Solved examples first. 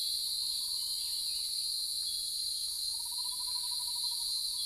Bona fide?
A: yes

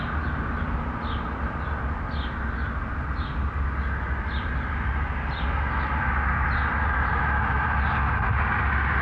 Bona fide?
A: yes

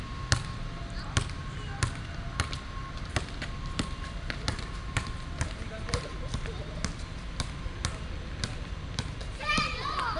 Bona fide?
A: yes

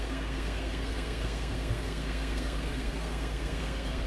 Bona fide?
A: no